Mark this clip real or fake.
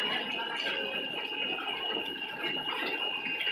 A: real